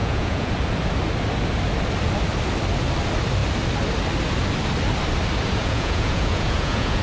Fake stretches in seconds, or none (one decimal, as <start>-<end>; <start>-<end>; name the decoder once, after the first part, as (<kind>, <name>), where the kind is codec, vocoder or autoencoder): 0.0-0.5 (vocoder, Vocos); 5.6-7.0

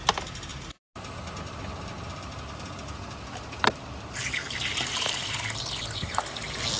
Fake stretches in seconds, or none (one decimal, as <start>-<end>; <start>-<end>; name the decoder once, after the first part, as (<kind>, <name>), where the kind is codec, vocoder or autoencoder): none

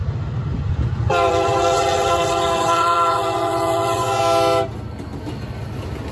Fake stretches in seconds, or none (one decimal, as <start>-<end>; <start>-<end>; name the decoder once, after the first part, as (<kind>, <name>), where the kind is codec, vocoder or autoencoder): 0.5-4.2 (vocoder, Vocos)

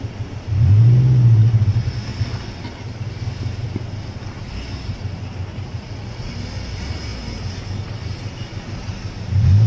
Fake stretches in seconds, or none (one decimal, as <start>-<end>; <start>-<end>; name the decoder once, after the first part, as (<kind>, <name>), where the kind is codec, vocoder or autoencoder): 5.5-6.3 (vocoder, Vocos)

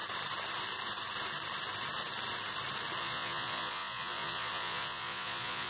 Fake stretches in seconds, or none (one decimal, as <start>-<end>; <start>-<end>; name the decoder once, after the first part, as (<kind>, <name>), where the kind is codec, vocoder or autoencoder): 3.0-5.7 (vocoder, Vocos)

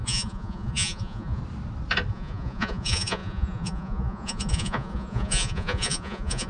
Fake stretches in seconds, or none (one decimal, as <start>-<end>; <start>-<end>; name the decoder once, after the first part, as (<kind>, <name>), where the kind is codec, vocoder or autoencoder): 0.0-1.4 (vocoder, Vocos); 2.1-6.5